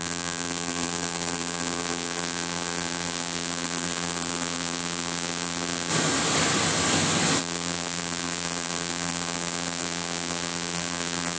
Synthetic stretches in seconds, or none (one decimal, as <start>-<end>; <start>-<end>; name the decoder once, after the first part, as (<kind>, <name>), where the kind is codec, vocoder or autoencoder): 0.0-5.9 (vocoder, BigVGAN v2); 7.4-11.4

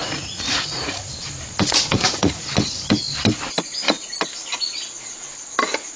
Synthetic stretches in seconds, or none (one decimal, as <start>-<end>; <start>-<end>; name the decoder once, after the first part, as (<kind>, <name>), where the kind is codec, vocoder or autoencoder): 0.0-1.0 (vocoder, Vocos); 1.9-2.4

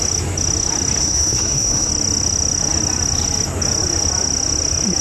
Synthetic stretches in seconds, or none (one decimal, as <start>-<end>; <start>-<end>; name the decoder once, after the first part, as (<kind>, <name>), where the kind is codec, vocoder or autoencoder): 1.0-1.9 (codec, SNAC)

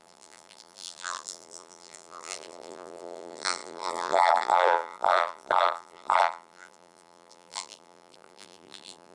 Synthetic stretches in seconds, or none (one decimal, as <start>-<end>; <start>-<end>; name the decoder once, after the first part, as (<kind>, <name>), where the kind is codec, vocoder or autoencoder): 0.0-9.1 (vocoder, BigVGAN v2)

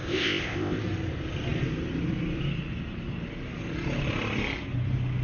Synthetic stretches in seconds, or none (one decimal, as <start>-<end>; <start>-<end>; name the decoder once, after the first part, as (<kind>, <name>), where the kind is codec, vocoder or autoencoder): 0.0-0.8 (codec, ZipCodec)

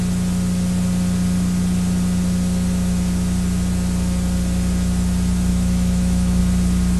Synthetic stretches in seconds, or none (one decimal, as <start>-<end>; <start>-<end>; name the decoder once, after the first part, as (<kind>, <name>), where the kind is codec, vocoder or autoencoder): 5.5-6.4 (autoencoder, DAC-VAE)

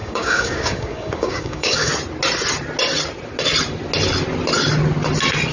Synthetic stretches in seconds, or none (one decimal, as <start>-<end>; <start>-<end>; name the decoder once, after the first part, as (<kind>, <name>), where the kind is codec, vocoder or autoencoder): 0.0-1.9 (codec, DAC)